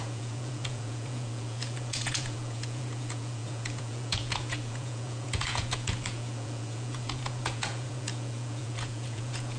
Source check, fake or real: fake